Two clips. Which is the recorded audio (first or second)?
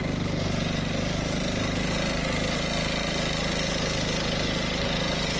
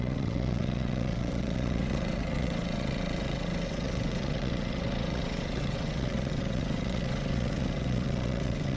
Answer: first